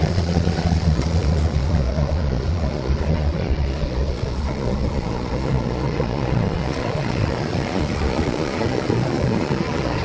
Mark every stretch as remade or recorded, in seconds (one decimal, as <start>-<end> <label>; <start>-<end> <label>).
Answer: 0.0-10.0 remade